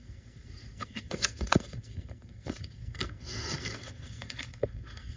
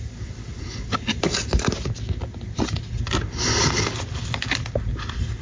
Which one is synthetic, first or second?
first